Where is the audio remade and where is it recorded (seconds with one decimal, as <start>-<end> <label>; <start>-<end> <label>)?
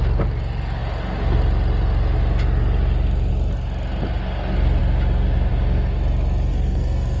0.0-6.5 recorded; 6.5-7.2 remade